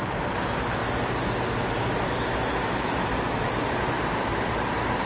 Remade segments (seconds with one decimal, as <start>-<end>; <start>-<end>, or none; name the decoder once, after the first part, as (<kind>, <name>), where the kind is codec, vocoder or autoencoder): none